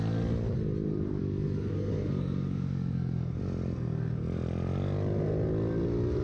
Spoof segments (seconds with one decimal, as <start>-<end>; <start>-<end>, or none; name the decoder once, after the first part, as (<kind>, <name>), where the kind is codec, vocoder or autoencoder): 1.2-3.4 (codec, DAC)